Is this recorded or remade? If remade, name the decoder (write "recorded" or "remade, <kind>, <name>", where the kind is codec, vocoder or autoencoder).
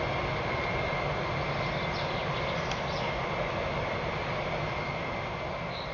recorded